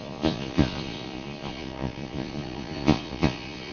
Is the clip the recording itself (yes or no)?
no